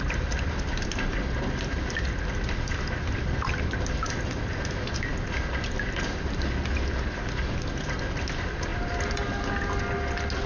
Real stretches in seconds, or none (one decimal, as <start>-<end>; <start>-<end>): 0.0-10.5